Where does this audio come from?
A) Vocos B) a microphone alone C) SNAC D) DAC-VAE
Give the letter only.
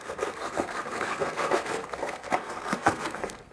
C